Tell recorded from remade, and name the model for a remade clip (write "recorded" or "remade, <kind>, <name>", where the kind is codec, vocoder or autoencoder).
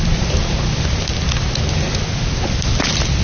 recorded